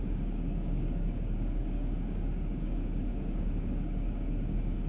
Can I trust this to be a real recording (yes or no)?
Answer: no